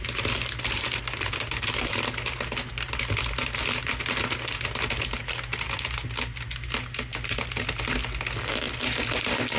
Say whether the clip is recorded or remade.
recorded